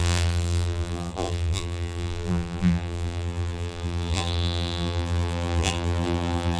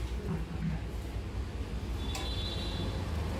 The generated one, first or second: first